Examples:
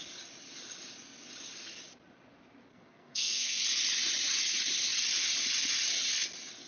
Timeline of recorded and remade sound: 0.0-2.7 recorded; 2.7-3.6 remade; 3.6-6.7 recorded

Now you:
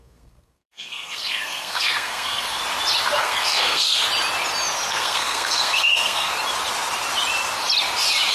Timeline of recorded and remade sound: 0.0-2.6 remade; 2.6-3.2 recorded; 3.2-4.0 remade; 4.0-4.9 recorded; 4.9-6.3 remade; 6.3-8.3 recorded

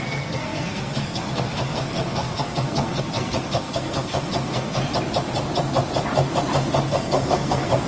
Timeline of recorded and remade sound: 0.0-4.8 remade; 4.8-6.9 recorded; 6.9-7.9 remade

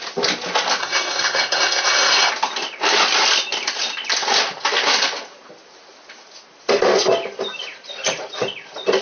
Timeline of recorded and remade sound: 0.0-0.8 recorded; 0.8-2.3 remade; 2.3-9.0 recorded

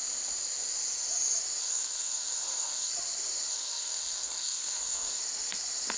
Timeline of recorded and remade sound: 0.0-1.6 recorded; 1.6-2.9 remade; 2.9-3.5 recorded; 3.5-5.2 remade; 5.2-6.0 recorded

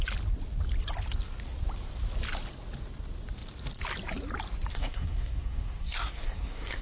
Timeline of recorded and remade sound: 0.0-4.7 recorded; 4.7-6.8 remade

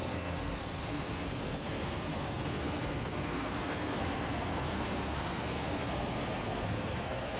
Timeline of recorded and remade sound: 0.0-7.4 remade

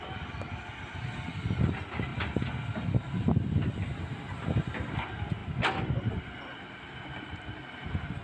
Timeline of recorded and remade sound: 0.0-8.2 recorded